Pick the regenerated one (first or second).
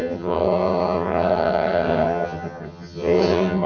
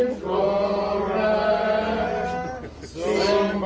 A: first